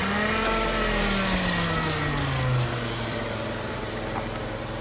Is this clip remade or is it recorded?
recorded